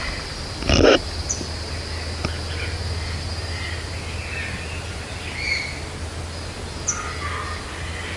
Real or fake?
real